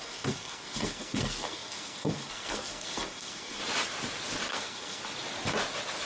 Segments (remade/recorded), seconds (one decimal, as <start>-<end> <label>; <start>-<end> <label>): 0.0-3.6 remade; 3.6-4.5 recorded; 4.5-5.0 remade; 5.0-6.1 recorded